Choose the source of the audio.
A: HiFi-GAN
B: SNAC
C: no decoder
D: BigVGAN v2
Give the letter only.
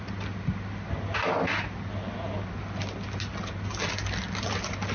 C